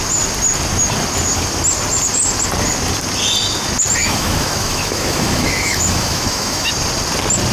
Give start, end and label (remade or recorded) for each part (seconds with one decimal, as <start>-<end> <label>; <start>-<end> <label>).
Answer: 0.0-4.0 recorded; 4.0-6.7 remade; 6.7-7.5 recorded